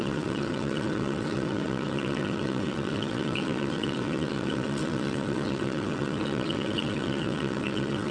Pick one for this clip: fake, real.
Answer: fake